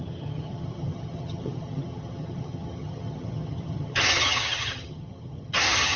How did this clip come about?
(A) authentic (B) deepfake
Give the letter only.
B